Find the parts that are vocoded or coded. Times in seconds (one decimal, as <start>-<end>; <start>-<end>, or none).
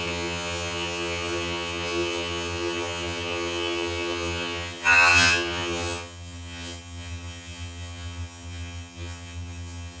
0.0-10.0